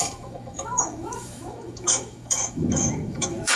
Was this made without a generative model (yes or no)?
no